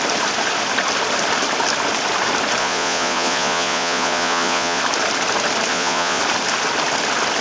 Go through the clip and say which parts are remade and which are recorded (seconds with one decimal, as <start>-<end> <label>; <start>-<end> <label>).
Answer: 0.0-2.6 recorded; 2.6-4.8 remade; 4.8-5.7 recorded; 5.7-6.2 remade; 6.2-7.4 recorded